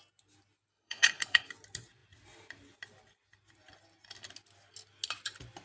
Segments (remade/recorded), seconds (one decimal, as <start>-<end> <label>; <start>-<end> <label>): 0.0-0.7 recorded; 0.7-1.5 remade; 1.5-5.6 recorded